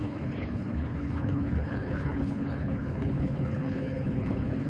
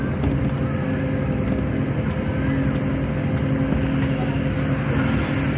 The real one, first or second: second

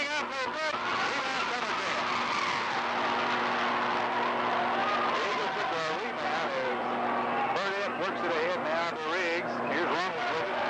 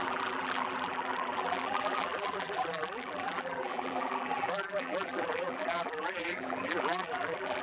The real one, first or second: first